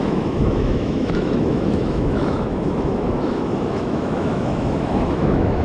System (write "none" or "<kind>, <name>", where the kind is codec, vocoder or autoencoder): autoencoder, DAC-VAE